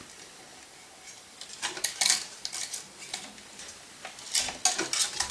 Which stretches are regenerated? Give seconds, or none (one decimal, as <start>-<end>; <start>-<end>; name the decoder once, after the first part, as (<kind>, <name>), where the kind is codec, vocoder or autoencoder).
none